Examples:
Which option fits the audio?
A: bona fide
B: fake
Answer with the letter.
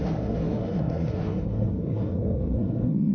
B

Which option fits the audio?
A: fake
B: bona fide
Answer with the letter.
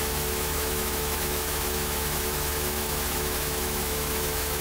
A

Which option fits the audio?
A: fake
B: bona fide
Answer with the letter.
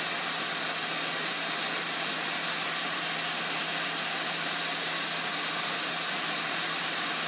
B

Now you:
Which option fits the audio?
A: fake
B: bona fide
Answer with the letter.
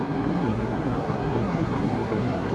A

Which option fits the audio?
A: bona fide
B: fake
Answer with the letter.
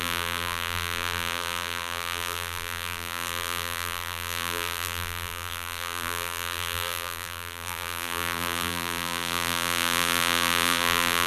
B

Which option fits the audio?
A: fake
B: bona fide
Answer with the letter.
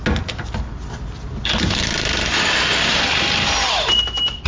B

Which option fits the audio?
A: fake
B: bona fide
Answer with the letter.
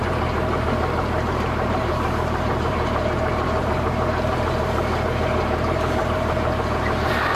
A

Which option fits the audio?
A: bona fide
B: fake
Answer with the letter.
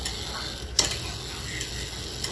A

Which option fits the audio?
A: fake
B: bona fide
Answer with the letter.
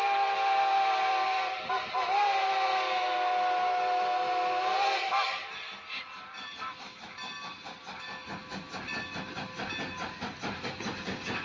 B